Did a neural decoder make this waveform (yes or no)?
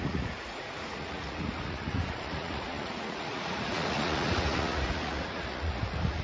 yes